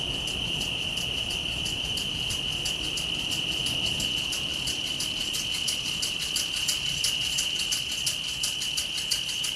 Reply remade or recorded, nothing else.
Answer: remade